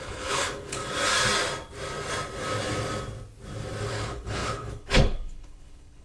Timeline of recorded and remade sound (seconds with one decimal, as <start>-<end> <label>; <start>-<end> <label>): 0.0-0.8 remade; 0.8-3.9 recorded; 3.9-6.0 remade